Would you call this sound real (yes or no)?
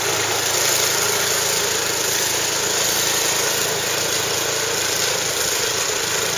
yes